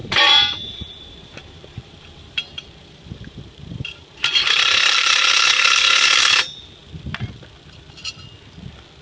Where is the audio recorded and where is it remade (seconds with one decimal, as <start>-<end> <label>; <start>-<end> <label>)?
0.0-5.3 remade; 5.3-9.0 recorded